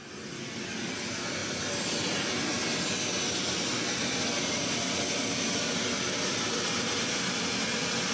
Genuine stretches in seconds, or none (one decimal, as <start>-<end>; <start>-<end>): 0.0-1.4; 2.2-2.6; 7.5-8.1